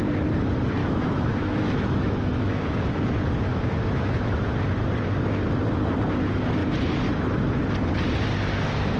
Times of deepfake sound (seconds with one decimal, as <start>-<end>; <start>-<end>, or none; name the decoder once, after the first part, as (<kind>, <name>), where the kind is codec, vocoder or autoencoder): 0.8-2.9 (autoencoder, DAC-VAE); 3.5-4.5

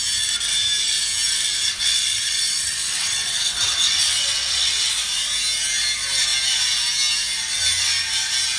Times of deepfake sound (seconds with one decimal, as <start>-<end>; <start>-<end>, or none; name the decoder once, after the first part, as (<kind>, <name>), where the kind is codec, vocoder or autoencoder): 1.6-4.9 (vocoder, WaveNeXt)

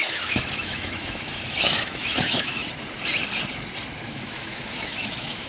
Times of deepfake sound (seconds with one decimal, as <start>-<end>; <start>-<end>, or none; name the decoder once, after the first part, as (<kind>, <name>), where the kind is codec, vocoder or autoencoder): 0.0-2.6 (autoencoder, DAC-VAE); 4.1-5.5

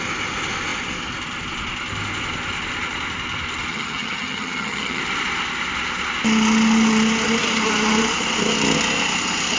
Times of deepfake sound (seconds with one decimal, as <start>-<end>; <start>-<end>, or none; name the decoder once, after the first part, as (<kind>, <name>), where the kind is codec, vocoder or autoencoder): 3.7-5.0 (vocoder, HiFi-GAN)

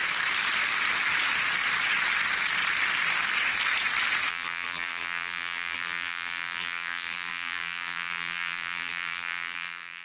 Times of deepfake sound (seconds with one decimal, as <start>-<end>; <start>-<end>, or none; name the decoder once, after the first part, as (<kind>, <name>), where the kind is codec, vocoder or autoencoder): 4.3-10.0 (vocoder, BigVGAN v2)

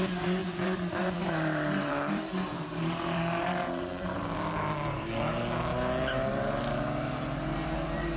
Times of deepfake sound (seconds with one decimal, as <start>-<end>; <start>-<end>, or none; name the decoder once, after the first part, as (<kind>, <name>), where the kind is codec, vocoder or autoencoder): 0.4-5.1 (vocoder, BigVGAN v2)

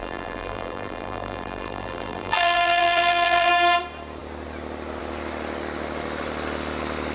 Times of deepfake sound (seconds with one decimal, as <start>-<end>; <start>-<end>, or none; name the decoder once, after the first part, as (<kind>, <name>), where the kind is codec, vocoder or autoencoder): 0.0-3.5 (vocoder, BigVGAN v2)